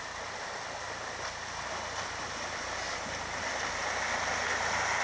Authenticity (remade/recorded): recorded